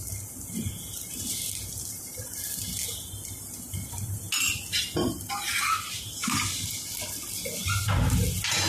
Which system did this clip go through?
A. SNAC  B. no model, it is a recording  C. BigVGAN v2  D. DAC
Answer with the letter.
B